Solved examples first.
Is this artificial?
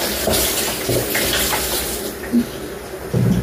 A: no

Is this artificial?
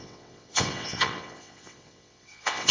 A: yes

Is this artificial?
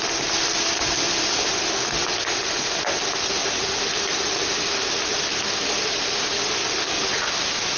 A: no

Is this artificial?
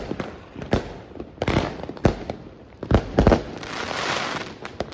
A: yes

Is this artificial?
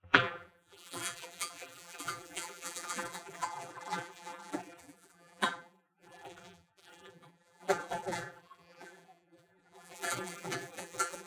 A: yes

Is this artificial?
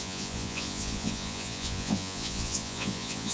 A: yes